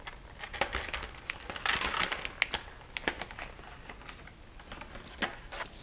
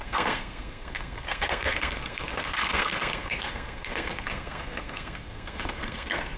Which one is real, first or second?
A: first